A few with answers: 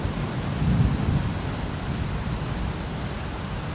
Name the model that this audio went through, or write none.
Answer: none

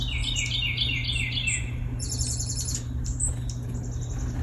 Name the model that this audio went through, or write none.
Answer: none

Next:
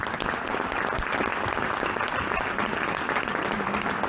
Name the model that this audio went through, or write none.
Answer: none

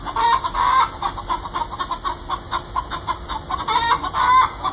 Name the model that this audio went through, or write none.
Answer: none